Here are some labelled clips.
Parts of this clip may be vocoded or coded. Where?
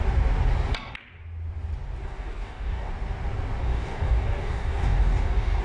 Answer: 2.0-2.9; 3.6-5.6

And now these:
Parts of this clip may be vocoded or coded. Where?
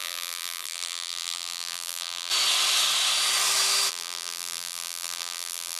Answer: 0.0-2.3; 3.9-5.8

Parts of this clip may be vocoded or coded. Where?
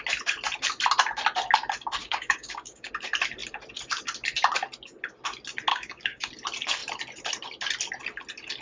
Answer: 2.0-2.9; 5.7-6.3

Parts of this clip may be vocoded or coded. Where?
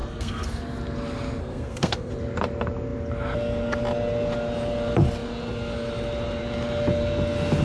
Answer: 0.0-0.6; 1.4-2.1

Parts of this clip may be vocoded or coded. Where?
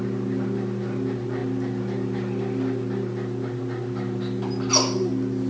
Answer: none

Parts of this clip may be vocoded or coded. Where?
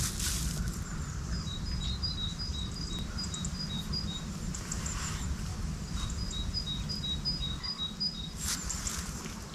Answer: none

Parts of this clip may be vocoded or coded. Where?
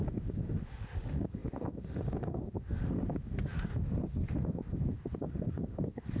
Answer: 0.0-6.2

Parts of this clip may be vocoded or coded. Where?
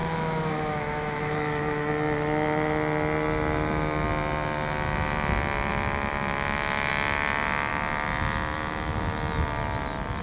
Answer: 0.0-1.9; 5.7-6.9